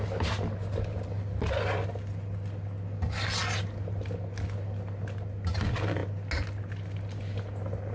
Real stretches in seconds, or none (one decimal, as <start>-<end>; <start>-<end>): 0.0-7.9